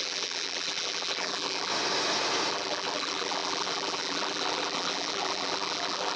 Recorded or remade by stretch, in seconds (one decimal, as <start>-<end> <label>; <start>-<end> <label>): 0.0-1.7 remade; 1.7-2.5 recorded; 2.5-6.2 remade